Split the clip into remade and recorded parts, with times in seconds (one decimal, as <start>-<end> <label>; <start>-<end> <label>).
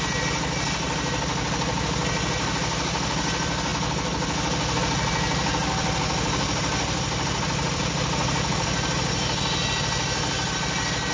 0.0-11.1 recorded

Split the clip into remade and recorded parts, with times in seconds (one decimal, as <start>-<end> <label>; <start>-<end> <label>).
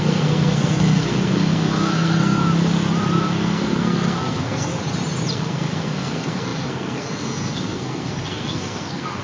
0.0-2.4 remade; 2.4-3.2 recorded; 3.2-4.7 remade; 4.7-5.3 recorded; 5.3-9.2 remade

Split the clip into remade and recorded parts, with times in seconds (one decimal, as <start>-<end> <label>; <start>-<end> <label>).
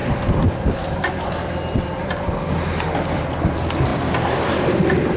0.0-5.2 recorded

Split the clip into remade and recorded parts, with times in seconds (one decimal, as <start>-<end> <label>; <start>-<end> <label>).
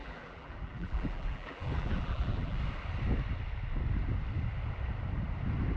0.0-2.6 remade; 2.6-5.8 recorded